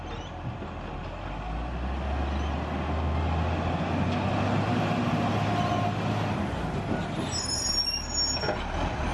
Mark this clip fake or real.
real